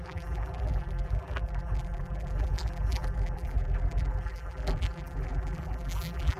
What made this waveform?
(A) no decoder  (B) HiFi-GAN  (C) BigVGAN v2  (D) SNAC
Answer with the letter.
C